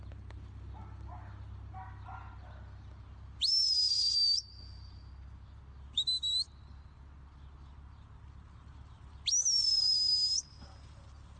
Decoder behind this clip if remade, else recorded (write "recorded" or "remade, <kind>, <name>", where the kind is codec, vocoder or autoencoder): recorded